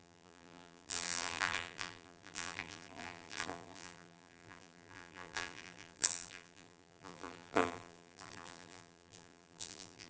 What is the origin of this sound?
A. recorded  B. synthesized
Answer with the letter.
B